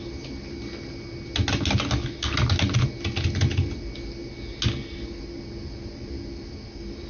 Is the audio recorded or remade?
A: recorded